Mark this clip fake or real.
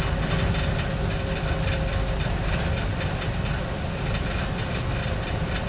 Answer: real